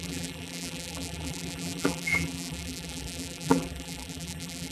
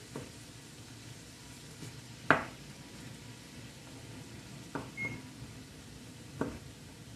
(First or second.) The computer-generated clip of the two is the first